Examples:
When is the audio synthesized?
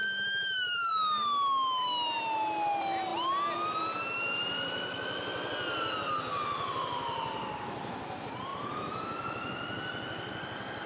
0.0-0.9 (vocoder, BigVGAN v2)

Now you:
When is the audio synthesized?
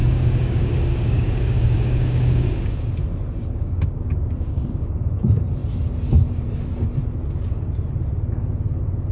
0.0-2.9 (codec, DAC); 3.4-4.8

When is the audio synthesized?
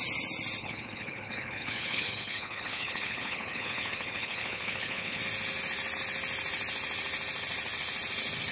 0.6-5.2 (codec, HILCodec)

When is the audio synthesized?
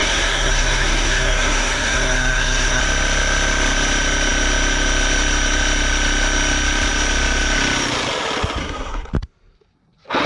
0.0-2.8 (codec, SNAC); 8.6-9.1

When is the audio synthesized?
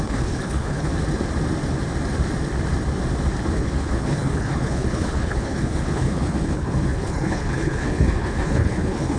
0.0-0.9 (codec, HILCodec); 3.5-9.2